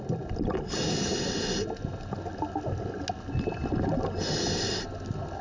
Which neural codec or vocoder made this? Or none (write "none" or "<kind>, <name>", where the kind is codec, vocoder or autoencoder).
none